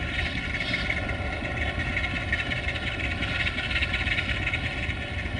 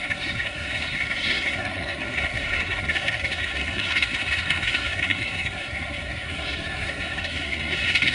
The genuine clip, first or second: first